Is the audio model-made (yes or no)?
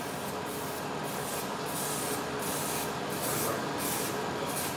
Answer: no